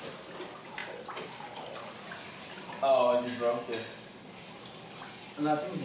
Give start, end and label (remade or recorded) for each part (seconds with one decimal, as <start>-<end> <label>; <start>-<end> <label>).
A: 0.0-5.8 recorded